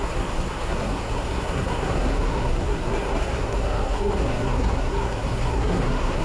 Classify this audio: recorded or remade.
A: remade